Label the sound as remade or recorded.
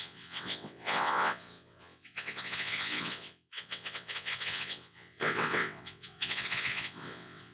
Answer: remade